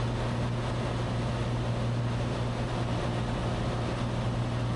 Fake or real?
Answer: real